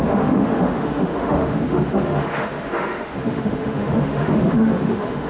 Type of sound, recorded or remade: remade